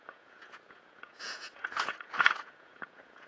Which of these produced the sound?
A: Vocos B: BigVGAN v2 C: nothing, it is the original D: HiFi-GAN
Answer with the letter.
A